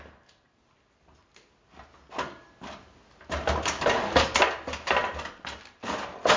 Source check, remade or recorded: recorded